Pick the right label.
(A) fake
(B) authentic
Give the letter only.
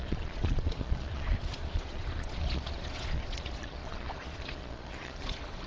A